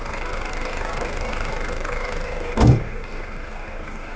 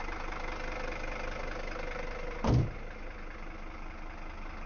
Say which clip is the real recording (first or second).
second